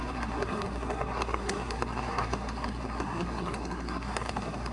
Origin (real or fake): fake